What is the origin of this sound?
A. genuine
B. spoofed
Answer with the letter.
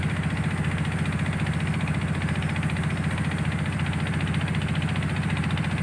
A